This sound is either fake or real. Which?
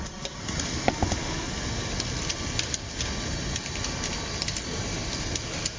real